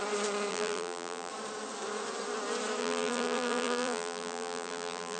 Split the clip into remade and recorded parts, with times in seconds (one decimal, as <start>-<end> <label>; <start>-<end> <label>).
0.0-0.5 recorded; 0.5-1.3 remade; 1.3-2.8 recorded; 2.8-5.2 remade